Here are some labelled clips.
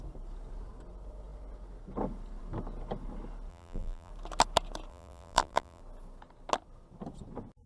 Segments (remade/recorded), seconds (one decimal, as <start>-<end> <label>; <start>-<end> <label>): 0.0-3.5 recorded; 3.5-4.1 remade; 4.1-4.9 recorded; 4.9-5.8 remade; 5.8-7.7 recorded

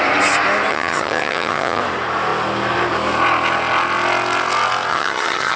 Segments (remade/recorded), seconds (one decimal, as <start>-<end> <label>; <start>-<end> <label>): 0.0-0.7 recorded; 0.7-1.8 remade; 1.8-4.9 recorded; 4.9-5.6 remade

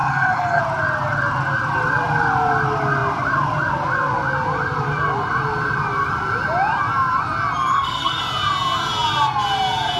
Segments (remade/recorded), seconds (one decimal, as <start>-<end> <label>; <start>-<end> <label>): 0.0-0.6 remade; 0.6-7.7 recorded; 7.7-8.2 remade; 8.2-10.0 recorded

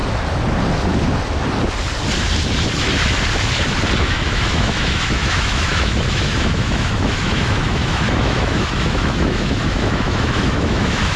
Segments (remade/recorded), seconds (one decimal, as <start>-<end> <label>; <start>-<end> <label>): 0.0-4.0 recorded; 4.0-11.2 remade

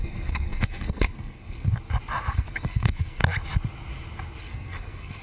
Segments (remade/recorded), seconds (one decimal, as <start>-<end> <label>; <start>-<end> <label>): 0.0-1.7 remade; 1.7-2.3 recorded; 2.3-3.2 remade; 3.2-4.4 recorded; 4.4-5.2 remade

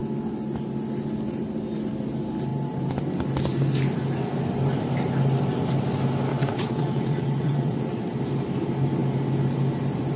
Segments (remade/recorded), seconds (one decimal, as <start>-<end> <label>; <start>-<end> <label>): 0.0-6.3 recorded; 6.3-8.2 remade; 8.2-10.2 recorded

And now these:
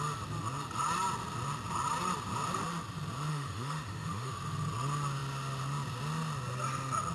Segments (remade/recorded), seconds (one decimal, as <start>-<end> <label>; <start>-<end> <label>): 0.0-3.3 recorded; 3.3-4.3 remade; 4.3-7.1 recorded

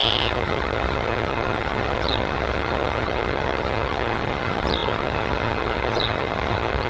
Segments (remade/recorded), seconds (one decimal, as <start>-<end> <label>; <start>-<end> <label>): 0.0-6.9 remade